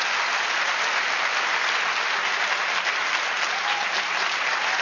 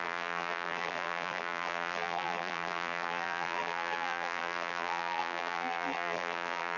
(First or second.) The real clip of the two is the first